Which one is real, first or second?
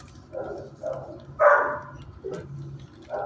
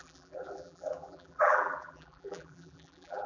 first